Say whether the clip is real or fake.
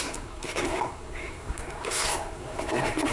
fake